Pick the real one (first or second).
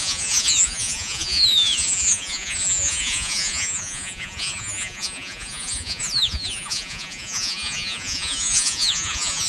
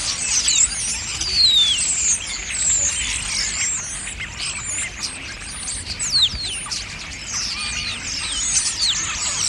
second